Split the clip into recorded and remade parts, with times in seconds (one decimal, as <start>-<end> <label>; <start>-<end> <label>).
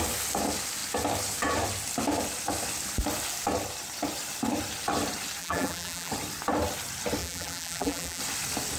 0.0-5.4 recorded; 5.4-6.1 remade; 6.1-7.2 recorded; 7.2-8.2 remade; 8.2-8.8 recorded